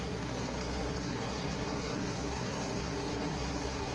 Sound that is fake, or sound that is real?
fake